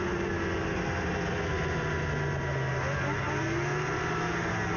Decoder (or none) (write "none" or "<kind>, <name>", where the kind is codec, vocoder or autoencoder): none